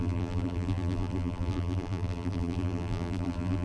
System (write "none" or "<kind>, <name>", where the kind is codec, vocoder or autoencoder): vocoder, BigVGAN v2